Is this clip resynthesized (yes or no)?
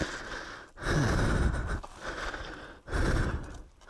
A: no